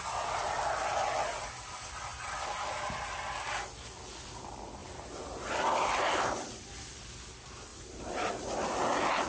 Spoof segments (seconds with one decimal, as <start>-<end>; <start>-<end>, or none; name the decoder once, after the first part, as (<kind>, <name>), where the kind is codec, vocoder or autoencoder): 2.1-2.9 (vocoder, BigVGAN v2); 4.8-6.6; 7.7-8.3